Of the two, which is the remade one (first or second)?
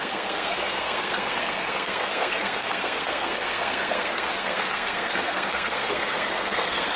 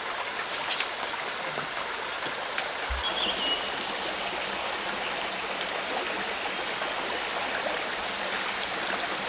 first